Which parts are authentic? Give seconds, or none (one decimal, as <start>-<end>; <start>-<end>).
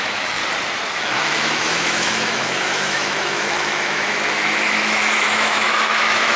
0.4-1.0